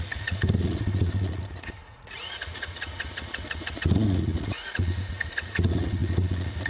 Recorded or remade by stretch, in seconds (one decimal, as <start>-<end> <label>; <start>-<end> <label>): 0.0-6.7 remade